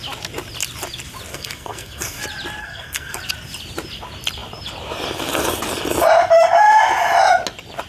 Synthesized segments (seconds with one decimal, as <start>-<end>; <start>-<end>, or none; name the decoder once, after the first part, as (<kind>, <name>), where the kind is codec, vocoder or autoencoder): 1.3-2.2 (codec, SNAC); 2.6-3.2